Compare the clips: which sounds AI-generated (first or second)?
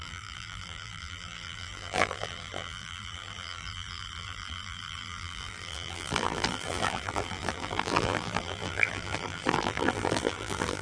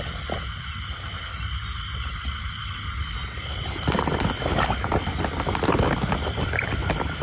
first